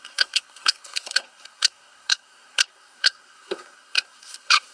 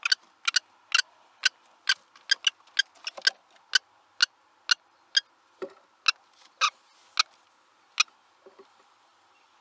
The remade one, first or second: first